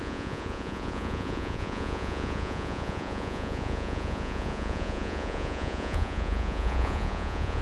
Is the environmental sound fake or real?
fake